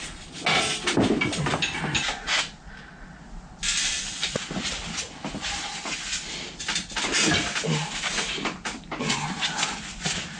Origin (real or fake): real